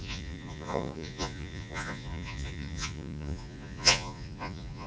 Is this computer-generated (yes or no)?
yes